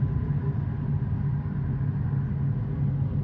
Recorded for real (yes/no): yes